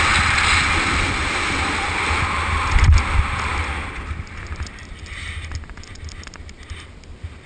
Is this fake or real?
real